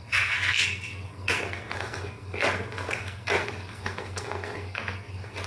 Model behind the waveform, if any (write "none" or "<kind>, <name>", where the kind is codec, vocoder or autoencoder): codec, SNAC